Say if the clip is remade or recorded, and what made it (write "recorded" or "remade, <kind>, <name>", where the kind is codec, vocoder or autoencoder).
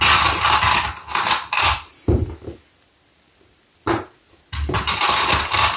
recorded